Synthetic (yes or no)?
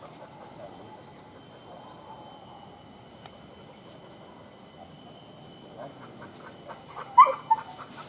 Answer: no